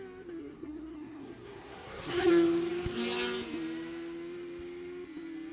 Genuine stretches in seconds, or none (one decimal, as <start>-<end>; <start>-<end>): 0.0-0.4; 2.3-5.5